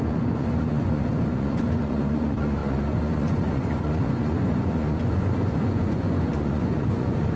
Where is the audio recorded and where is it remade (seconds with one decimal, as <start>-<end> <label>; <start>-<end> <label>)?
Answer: 0.0-7.4 remade